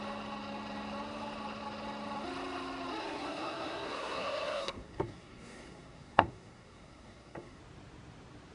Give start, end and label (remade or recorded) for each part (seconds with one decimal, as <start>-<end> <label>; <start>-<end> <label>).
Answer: 0.0-3.0 recorded; 3.0-7.6 remade; 7.6-8.5 recorded